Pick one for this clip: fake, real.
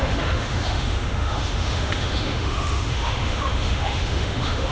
fake